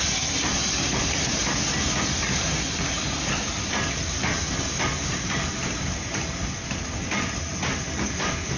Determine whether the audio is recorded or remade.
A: recorded